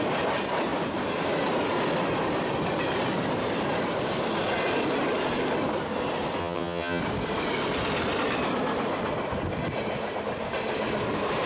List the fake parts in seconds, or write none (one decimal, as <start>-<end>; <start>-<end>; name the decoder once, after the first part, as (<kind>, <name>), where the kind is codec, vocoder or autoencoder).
6.4-7.0 (vocoder, HiFi-GAN)